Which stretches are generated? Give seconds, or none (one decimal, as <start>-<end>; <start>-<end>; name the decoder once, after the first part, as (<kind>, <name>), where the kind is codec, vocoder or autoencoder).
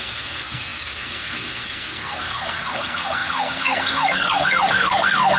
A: 0.0-5.4 (codec, SNAC)